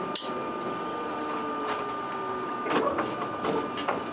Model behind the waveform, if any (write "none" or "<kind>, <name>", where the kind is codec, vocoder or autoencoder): none